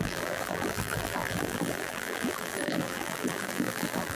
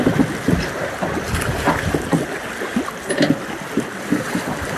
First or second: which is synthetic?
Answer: first